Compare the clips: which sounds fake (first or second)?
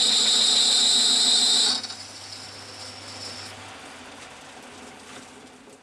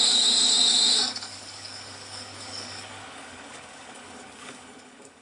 second